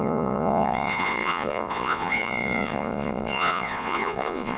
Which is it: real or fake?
fake